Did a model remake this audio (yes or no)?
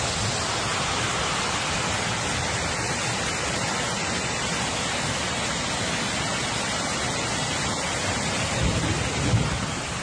no